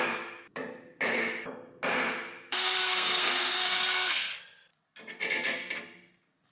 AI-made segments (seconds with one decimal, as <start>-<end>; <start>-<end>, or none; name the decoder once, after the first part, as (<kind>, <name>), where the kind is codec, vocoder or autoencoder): 2.5-4.3 (codec, SNAC)